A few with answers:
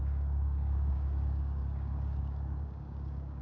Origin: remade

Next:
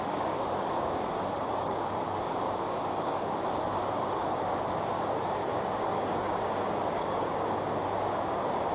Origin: remade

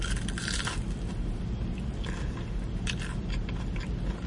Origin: recorded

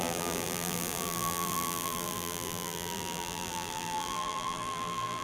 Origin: remade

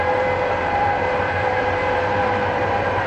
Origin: remade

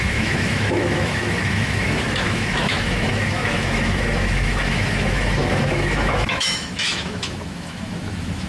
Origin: remade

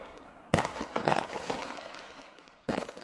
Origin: remade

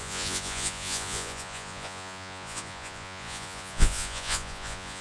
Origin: remade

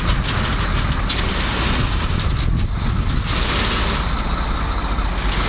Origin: recorded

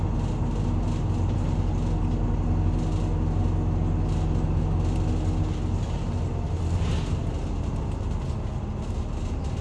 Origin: recorded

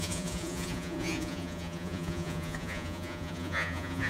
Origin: remade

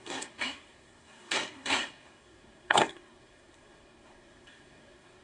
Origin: remade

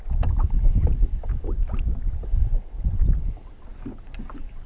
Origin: recorded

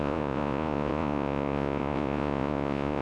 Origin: remade